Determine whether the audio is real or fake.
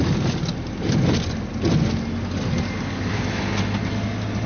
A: real